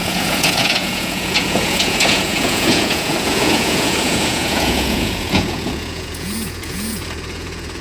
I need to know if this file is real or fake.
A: fake